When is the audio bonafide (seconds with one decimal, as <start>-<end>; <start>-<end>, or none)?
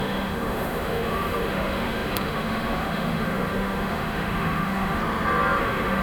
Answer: 5.0-5.6